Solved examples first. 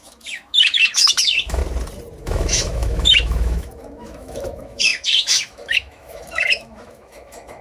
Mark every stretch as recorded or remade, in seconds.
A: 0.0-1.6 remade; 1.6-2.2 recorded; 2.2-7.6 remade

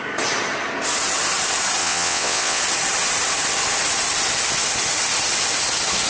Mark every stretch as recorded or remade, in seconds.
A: 0.0-1.8 recorded; 1.8-2.6 remade; 2.6-6.1 recorded

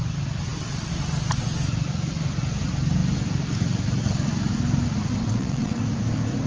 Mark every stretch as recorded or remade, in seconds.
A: 0.0-5.2 recorded; 5.2-5.8 remade; 5.8-6.5 recorded

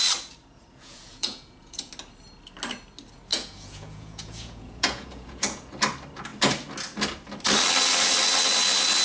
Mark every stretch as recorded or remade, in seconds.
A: 0.0-0.4 recorded; 0.4-1.9 remade; 1.9-3.3 recorded; 3.3-5.7 remade; 5.7-9.0 recorded